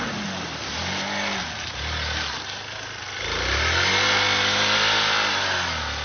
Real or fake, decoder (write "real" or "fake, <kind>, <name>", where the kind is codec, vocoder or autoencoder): real